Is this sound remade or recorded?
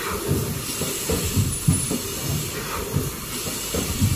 recorded